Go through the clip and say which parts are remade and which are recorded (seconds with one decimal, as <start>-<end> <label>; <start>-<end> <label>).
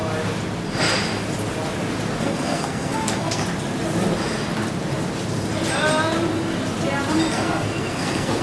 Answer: 0.0-2.2 recorded; 2.2-3.4 remade; 3.4-7.3 recorded; 7.3-8.4 remade